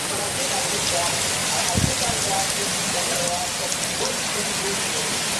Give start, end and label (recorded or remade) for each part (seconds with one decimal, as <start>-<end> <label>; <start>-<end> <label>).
0.0-5.4 recorded